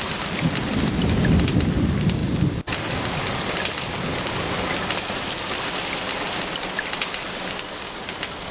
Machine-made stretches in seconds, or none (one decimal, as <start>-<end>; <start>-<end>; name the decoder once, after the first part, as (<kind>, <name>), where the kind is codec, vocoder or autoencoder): none